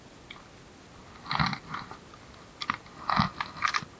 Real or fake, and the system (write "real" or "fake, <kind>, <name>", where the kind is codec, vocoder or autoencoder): real